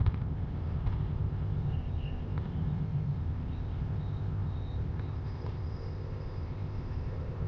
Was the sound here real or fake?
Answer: fake